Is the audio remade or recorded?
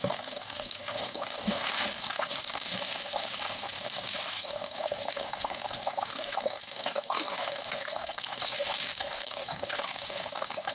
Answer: remade